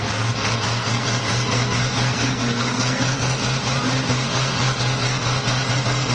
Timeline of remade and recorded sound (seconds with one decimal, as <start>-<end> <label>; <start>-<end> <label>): 0.0-3.6 remade; 3.6-4.1 recorded; 4.1-6.1 remade